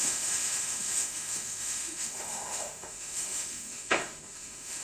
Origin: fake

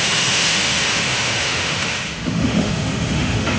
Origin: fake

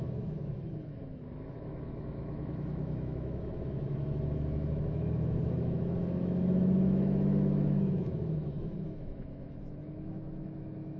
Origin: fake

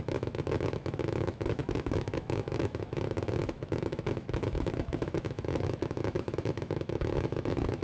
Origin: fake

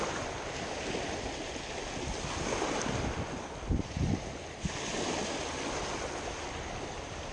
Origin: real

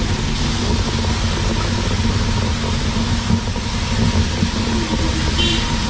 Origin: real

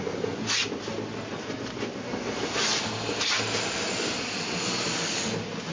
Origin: real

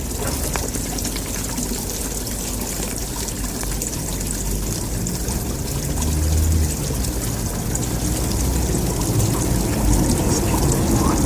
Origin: real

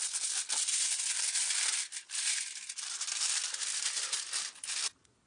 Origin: real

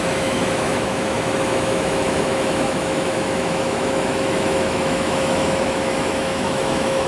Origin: fake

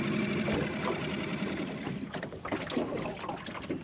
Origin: real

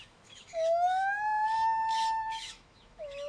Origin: fake